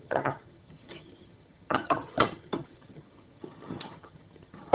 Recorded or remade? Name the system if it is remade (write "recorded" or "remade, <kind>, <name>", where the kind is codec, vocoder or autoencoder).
remade, vocoder, HiFi-GAN